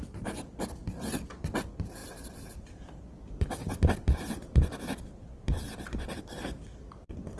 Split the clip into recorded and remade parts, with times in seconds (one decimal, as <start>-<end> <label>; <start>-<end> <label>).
0.0-7.4 recorded